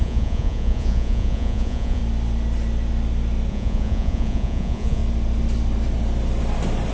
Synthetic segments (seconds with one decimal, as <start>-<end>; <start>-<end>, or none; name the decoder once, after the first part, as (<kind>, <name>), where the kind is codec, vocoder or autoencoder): 0.0-2.0 (vocoder, Vocos); 3.5-5.0